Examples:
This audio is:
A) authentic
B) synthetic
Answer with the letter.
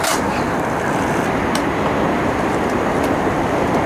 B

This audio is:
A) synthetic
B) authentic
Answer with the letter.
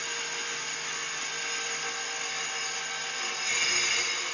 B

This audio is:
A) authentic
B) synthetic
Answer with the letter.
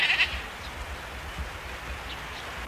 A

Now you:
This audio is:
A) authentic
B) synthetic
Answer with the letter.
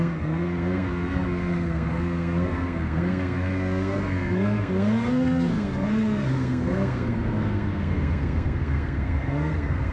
B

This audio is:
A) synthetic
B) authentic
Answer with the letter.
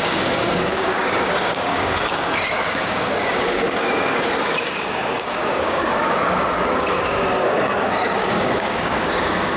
A